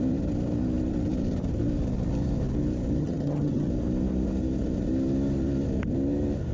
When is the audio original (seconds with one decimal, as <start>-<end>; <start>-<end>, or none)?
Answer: 0.0-3.0; 3.7-6.5